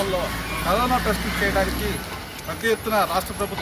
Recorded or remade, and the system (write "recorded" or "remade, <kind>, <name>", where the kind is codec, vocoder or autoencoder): recorded